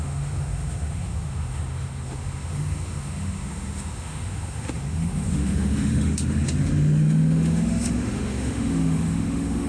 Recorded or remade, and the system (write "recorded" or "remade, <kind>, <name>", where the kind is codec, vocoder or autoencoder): remade, autoencoder, DAC-VAE